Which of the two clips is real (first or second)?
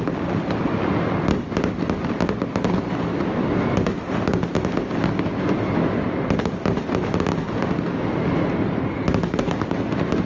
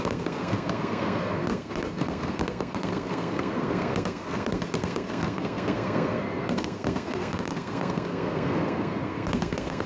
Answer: first